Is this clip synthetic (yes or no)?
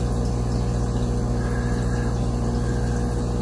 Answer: no